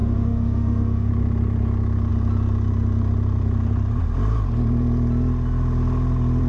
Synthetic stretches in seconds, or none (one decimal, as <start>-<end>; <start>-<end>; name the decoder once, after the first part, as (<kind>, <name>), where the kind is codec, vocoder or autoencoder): 0.0-1.1 (autoencoder, DAC-VAE)